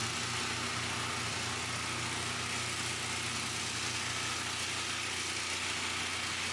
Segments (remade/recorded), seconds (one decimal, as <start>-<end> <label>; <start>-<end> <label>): 0.0-6.5 recorded